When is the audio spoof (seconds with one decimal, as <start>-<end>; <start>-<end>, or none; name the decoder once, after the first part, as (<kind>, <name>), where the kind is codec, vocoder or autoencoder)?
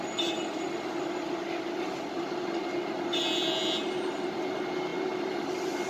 none